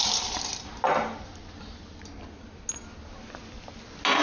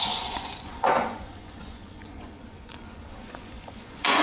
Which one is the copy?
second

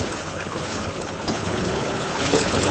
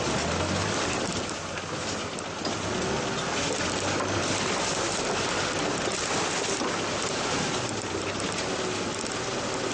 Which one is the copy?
first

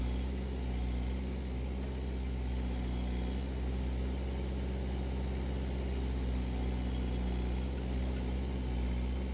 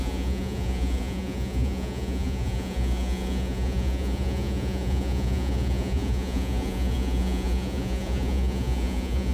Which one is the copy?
second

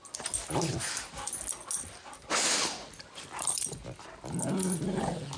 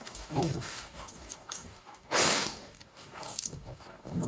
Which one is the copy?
second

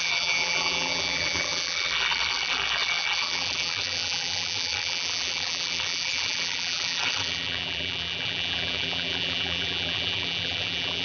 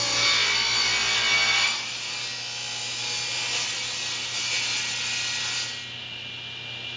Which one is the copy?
first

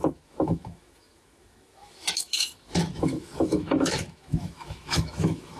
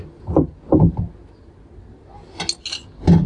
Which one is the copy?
first